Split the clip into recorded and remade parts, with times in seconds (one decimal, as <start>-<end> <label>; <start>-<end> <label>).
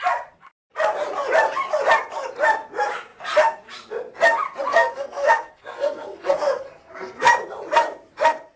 0.0-4.7 recorded; 4.7-7.3 remade; 7.3-8.6 recorded